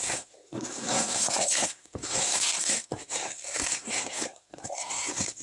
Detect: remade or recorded remade